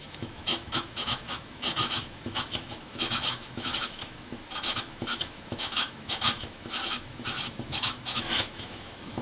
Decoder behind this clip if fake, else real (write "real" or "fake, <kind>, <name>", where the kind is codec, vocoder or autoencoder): fake, autoencoder, DAC-VAE